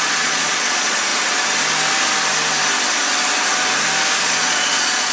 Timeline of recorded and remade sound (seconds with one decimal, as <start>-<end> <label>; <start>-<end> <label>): 0.0-1.1 remade; 1.1-4.2 recorded; 4.2-5.1 remade